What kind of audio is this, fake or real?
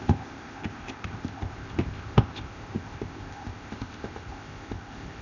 fake